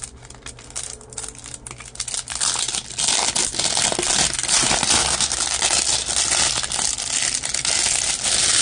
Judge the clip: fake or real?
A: real